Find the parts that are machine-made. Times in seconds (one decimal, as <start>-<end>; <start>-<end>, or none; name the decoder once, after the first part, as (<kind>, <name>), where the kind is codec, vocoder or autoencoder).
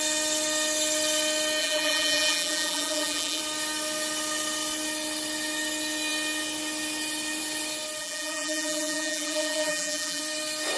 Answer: 1.6-3.4 (vocoder, BigVGAN v2); 8.0-10.2